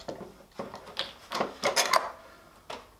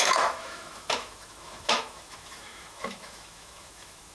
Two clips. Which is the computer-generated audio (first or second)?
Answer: second